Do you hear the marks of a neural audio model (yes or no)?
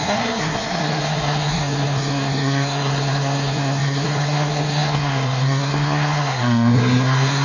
yes